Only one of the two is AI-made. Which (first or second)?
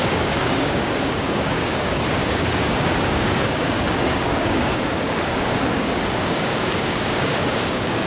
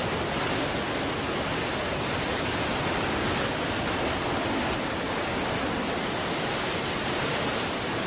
first